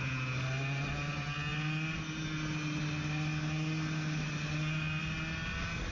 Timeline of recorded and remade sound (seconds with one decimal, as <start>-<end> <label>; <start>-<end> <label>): 0.0-5.9 recorded

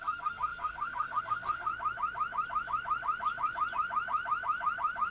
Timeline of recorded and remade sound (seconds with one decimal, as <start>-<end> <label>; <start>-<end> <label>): 0.0-1.7 remade; 1.7-5.1 recorded